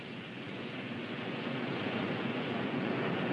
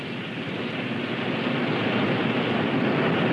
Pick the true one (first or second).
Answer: second